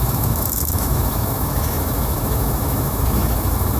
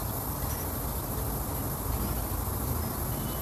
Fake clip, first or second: first